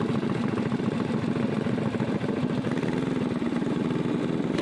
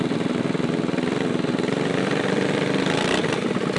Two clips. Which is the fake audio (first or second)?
second